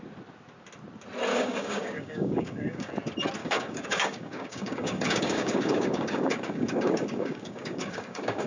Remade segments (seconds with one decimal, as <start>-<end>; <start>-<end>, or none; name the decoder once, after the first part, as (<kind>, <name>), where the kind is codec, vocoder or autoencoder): 1.3-2.9 (codec, DAC); 3.4-8.5